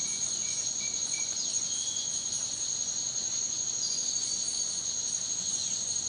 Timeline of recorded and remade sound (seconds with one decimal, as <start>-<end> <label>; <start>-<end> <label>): 0.0-6.1 remade